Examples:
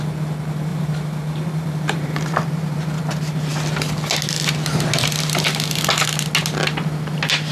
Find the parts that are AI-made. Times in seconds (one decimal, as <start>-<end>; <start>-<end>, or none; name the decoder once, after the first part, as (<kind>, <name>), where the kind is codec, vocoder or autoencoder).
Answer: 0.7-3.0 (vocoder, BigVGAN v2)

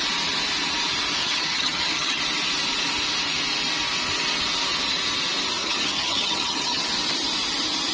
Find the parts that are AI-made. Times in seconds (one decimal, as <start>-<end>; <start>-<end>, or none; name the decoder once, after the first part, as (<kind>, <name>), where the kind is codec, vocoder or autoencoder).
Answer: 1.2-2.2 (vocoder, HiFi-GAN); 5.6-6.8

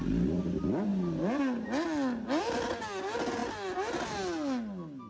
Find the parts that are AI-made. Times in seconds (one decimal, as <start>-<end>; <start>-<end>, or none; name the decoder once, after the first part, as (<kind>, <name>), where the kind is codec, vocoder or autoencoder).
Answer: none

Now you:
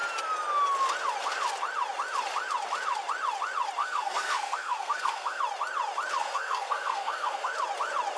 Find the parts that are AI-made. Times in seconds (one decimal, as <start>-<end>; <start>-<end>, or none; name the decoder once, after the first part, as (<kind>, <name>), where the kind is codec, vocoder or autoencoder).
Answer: 3.8-5.4 (codec, SNAC); 6.2-7.5

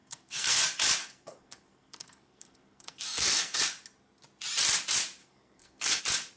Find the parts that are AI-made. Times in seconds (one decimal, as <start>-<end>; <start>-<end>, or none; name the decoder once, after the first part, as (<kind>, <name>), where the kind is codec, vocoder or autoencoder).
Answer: 0.0-0.6 (codec, SNAC); 1.0-3.6; 5.2-6.0

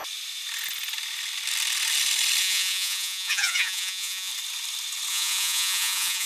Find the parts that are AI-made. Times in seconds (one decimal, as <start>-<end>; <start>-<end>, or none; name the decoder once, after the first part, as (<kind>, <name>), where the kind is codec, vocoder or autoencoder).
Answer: 2.4-4.3 (vocoder, Vocos); 5.1-6.3